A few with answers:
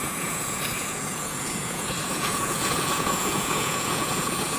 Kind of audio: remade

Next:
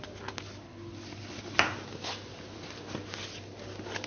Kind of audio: recorded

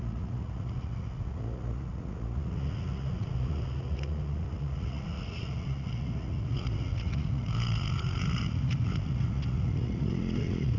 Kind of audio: remade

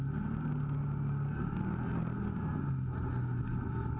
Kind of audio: recorded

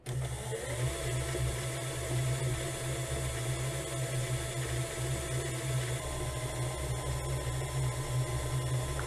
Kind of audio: recorded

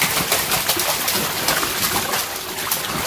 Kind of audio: recorded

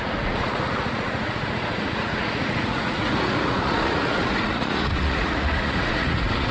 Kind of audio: remade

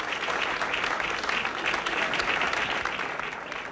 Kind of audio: recorded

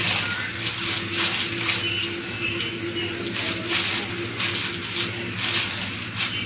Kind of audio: recorded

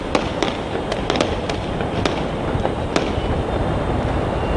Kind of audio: recorded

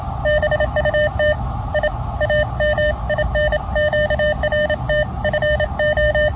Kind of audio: recorded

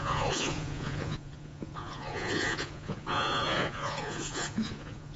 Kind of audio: remade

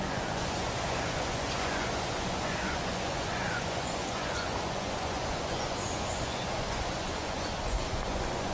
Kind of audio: remade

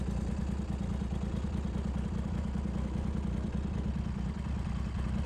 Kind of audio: recorded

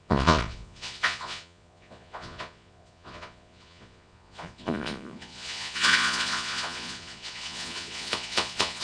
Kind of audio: remade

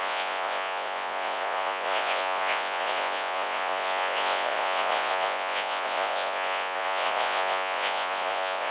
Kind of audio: remade